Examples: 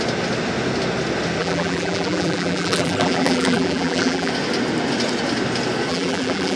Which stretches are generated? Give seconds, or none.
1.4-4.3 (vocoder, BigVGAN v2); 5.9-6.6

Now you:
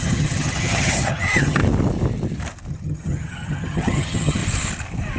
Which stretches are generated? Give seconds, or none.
0.0-1.6 (vocoder, HiFi-GAN); 2.7-4.4